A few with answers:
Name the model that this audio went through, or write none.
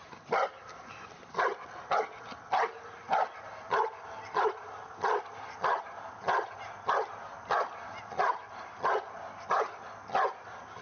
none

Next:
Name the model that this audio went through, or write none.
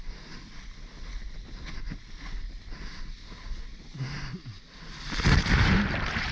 none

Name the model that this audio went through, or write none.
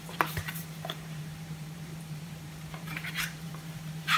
vocoder, BigVGAN v2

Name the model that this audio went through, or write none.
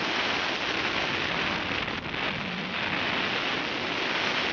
none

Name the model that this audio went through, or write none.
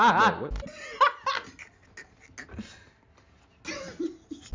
none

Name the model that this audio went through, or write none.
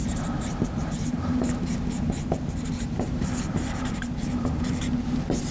vocoder, BigVGAN v2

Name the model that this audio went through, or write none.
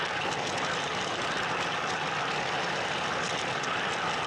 none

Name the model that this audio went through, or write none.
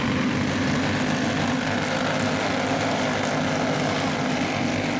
none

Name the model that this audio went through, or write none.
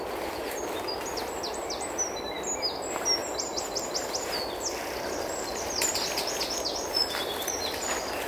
none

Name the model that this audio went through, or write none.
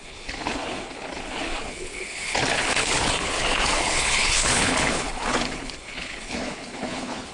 codec, HILCodec